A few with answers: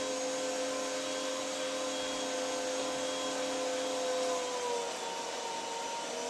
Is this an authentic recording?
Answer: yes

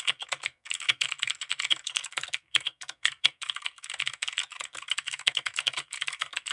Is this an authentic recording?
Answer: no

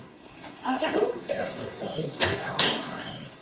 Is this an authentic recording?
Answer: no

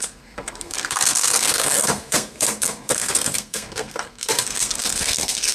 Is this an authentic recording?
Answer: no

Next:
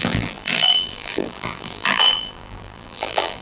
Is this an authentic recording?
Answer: no